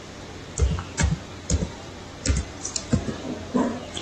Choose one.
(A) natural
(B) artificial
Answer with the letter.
A